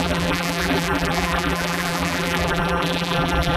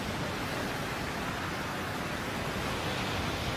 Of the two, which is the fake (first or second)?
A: first